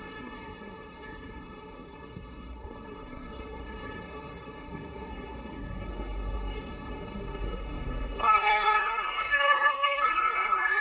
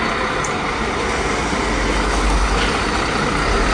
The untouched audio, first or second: second